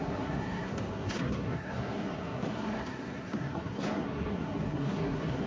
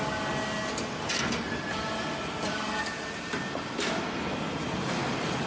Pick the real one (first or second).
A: second